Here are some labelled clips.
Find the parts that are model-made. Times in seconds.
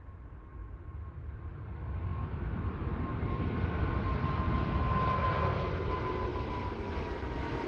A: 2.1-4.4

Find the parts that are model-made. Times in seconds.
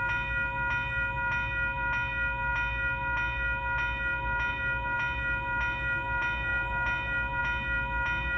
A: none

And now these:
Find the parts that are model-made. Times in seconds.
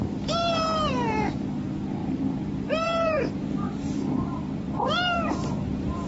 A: 2.0-6.1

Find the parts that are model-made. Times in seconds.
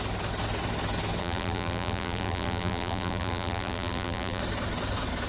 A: 1.2-4.4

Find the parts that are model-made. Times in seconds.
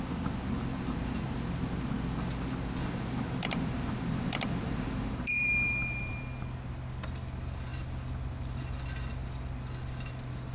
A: 2.8-6.2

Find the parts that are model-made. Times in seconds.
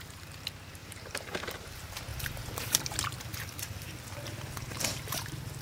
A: 0.8-1.7; 2.1-5.6